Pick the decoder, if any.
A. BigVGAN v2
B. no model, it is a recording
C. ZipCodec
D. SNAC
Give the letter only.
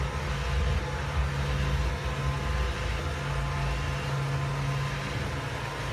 B